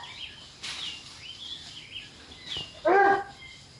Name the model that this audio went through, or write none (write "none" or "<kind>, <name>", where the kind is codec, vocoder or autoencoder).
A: none